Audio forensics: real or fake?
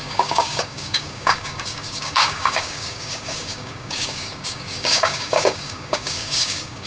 fake